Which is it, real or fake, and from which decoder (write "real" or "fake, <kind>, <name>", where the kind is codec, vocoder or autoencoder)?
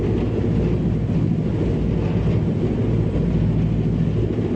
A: real